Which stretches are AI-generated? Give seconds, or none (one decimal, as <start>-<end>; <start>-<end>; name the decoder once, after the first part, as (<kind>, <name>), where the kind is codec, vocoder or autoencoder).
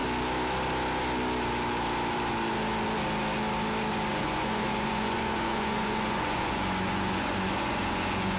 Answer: 4.1-8.4 (vocoder, Vocos)